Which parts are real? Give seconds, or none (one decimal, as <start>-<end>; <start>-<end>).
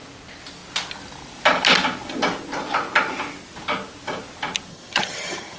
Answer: 0.0-4.7